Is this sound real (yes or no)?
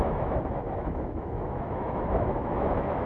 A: no